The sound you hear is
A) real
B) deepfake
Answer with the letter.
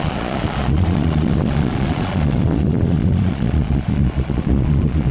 B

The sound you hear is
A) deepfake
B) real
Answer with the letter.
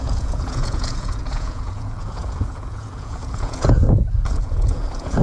A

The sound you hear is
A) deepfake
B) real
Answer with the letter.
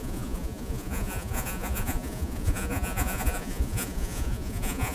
A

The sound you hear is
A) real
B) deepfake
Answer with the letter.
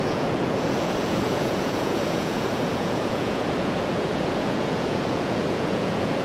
B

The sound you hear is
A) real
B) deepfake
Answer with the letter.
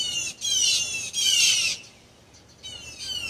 A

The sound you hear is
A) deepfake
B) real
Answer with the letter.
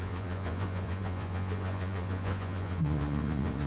A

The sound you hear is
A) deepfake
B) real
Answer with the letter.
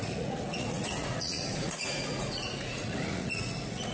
A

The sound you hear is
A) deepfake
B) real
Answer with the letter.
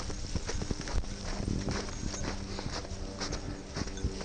B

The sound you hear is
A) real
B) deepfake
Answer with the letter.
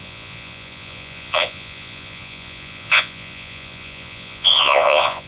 B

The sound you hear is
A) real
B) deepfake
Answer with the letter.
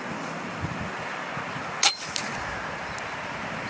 A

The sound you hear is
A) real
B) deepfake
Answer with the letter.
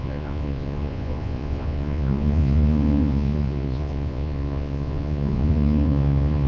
B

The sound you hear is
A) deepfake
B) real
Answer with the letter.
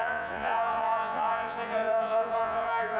A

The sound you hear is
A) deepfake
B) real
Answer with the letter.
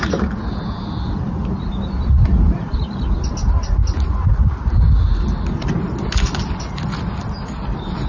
B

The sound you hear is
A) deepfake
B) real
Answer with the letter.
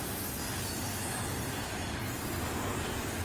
B